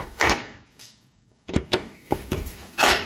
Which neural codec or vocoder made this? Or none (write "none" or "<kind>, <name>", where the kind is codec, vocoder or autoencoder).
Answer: codec, DAC